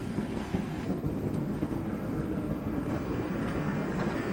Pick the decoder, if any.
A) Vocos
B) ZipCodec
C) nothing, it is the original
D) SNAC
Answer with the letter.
D